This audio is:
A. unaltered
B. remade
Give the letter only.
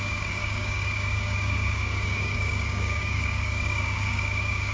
B